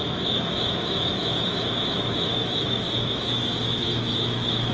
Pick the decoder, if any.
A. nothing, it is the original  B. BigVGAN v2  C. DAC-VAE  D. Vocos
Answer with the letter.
C